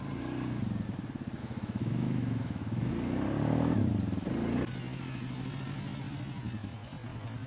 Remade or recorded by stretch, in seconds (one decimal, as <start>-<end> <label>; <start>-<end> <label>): 0.0-1.4 recorded; 1.4-2.9 remade; 2.9-7.5 recorded